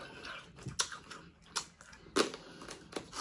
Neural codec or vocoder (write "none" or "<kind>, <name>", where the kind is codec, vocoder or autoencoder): none